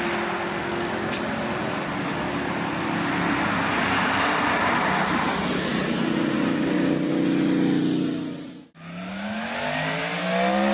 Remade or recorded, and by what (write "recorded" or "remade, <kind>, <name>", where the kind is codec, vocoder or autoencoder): recorded